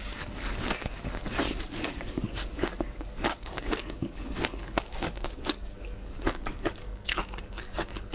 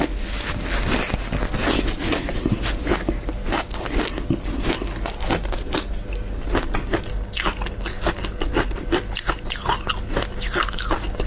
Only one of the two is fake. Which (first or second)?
first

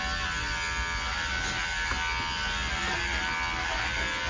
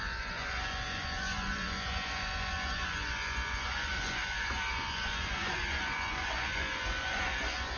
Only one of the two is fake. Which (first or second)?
second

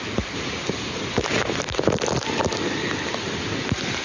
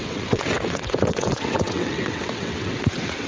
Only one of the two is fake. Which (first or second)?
second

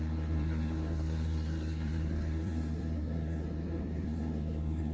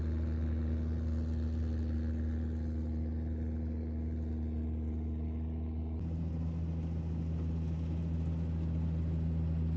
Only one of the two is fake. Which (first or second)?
first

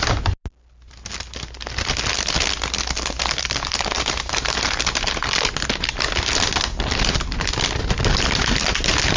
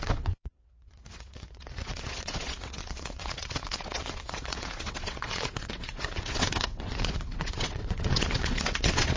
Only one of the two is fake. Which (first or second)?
second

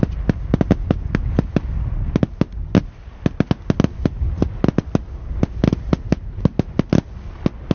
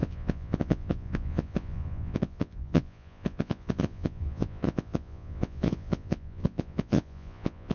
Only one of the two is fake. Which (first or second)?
second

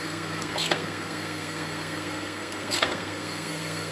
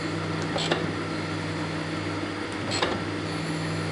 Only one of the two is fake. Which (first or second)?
first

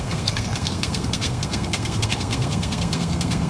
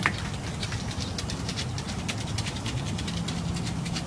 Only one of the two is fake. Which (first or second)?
first